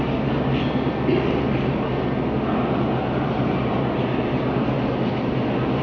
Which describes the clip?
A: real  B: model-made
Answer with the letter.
A